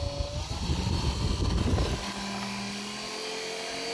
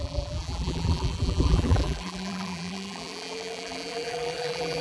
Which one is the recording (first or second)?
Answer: first